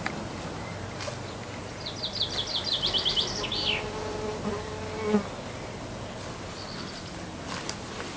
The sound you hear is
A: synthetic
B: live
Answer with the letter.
B